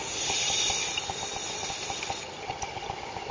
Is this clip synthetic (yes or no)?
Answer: no